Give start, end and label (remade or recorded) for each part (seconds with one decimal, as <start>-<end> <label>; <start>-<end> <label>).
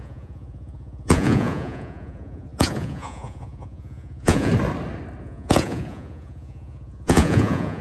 0.0-4.5 remade; 4.5-5.2 recorded; 5.2-7.8 remade